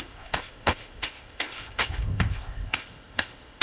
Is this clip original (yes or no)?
no